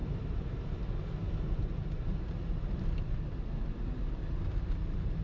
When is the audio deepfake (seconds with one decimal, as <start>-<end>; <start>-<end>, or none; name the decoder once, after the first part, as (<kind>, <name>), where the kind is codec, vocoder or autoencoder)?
0.0-0.7 (vocoder, BigVGAN v2)